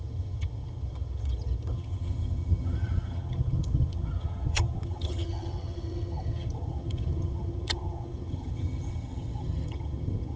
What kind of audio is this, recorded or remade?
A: remade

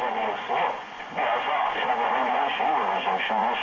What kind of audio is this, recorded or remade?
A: remade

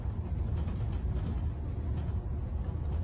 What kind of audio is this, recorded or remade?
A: recorded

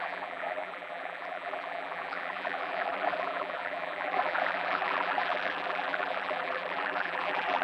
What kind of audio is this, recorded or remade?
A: remade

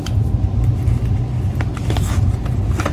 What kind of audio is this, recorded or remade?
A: recorded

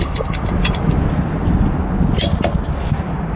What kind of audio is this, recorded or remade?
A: recorded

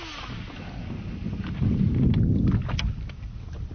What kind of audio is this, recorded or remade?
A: recorded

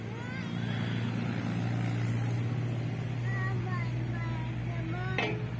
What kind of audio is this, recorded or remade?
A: recorded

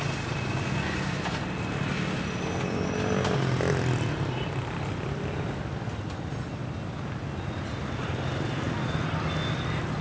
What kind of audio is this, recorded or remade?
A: recorded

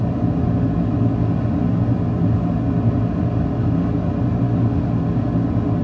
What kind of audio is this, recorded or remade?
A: recorded